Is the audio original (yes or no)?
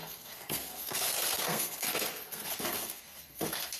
no